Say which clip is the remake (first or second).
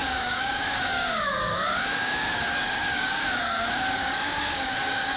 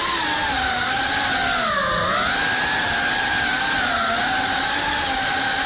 first